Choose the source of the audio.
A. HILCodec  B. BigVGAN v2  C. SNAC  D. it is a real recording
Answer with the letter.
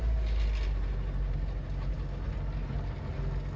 D